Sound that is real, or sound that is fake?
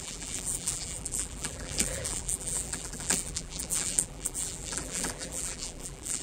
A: fake